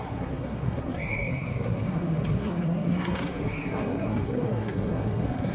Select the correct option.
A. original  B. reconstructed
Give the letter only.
B